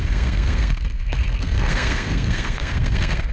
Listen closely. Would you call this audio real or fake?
fake